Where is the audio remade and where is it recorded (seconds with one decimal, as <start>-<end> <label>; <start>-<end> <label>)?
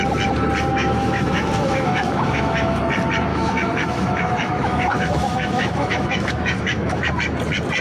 0.0-0.7 recorded; 0.7-2.8 remade; 2.8-3.3 recorded; 3.3-7.1 remade; 7.1-7.8 recorded